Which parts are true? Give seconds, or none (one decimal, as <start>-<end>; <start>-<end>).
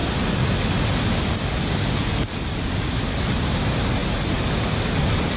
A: 0.0-5.4